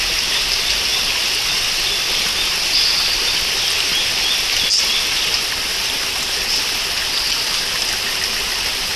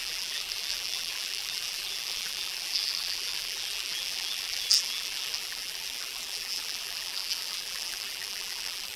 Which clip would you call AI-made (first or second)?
second